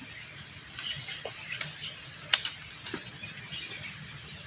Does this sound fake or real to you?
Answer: real